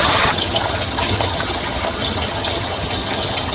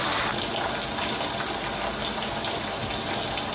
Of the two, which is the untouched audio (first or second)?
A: second